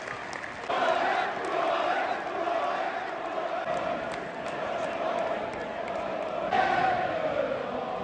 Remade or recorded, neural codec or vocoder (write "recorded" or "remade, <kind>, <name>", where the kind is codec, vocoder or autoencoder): recorded